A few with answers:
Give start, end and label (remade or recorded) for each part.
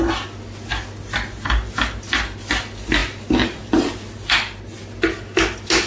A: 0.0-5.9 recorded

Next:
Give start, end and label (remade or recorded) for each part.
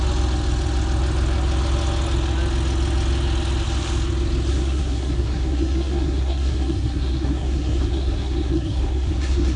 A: 0.0-4.5 recorded; 4.5-9.6 remade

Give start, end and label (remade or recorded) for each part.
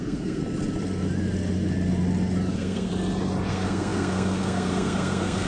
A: 0.0-0.4 remade; 0.4-2.5 recorded; 2.5-2.9 remade; 2.9-3.5 recorded; 3.5-5.5 remade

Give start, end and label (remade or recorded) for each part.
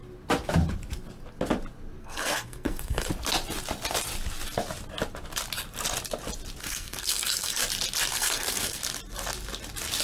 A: 0.0-2.0 recorded; 2.0-3.1 remade; 3.1-6.6 recorded; 6.6-7.6 remade; 7.6-8.1 recorded; 8.1-8.8 remade; 8.8-10.0 recorded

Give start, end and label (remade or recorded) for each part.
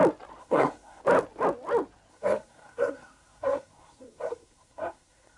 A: 0.0-0.4 recorded; 0.4-1.0 remade; 1.0-2.1 recorded; 2.1-5.4 remade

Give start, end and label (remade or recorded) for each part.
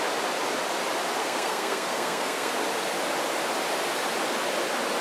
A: 0.0-1.2 recorded; 1.2-2.5 remade; 2.5-5.0 recorded